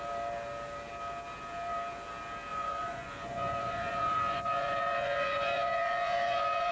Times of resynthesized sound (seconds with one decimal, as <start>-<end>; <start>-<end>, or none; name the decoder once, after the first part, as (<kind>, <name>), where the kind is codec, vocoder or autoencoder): 2.5-6.7 (vocoder, Vocos)